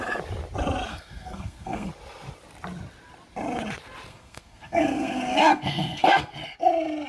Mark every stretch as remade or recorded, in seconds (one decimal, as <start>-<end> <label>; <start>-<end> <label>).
0.0-0.9 recorded; 0.9-1.9 remade; 1.9-4.1 recorded; 4.1-6.3 remade; 6.3-7.1 recorded